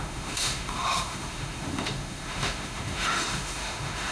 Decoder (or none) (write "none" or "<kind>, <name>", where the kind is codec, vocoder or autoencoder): autoencoder, DAC-VAE